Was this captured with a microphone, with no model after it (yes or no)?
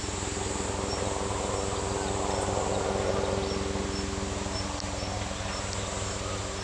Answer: yes